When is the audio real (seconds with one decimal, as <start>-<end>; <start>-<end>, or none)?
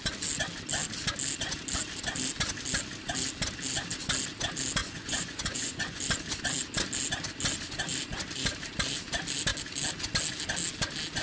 0.0-4.8; 6.0-11.2